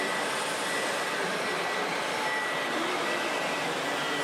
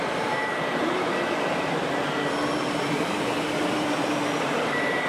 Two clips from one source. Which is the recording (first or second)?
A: first